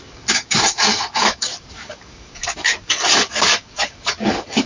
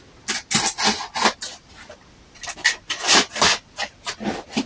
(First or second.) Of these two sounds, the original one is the second